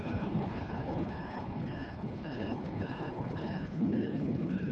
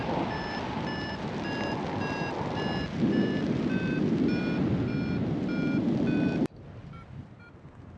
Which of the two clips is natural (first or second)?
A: second